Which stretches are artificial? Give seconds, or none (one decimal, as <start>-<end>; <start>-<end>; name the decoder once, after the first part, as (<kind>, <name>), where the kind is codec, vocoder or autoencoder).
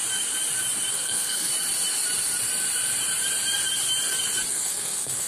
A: 0.9-1.5 (codec, SNAC); 4.5-5.3